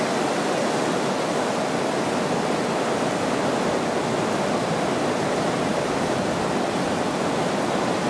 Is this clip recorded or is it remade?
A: recorded